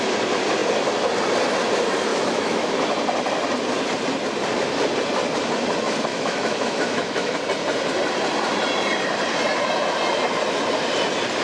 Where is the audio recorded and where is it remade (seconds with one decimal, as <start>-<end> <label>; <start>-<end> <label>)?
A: 0.0-2.1 recorded; 2.1-2.7 remade; 2.7-6.1 recorded; 6.1-7.4 remade; 7.4-11.4 recorded